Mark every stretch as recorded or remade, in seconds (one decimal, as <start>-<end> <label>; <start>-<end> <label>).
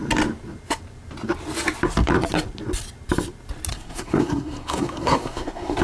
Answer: 0.0-3.7 recorded; 3.7-5.8 remade